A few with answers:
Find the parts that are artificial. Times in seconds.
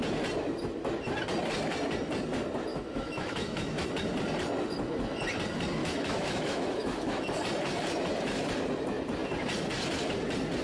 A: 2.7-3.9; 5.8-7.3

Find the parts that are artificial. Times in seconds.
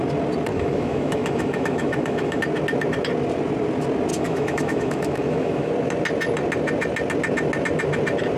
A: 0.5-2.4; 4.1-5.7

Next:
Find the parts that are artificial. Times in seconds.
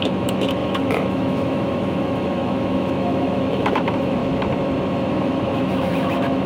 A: 0.0-4.2; 5.1-6.5